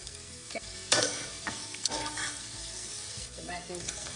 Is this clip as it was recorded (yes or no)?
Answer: no